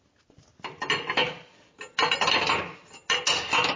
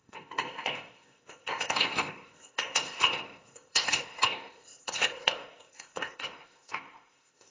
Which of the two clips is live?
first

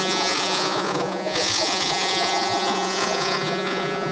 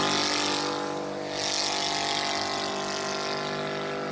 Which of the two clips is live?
second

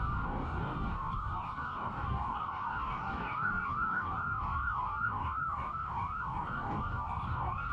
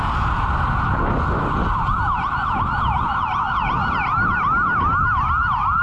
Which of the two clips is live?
second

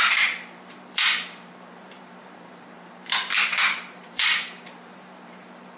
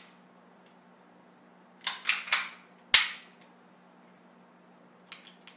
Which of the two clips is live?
second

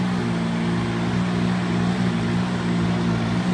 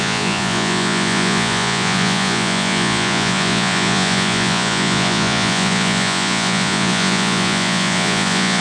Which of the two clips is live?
first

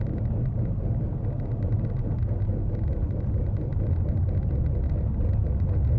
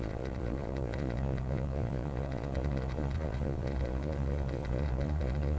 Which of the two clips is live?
first